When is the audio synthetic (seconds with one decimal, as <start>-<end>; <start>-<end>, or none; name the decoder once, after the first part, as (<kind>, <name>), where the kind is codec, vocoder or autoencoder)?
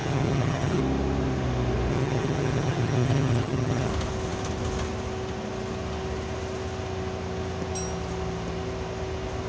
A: 0.0-0.8 (vocoder, HiFi-GAN); 1.9-3.9